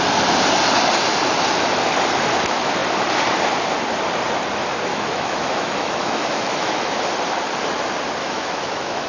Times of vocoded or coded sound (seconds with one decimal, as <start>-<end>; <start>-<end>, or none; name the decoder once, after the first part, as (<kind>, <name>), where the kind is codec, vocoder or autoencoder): 4.9-6.9 (autoencoder, DAC-VAE); 8.2-9.1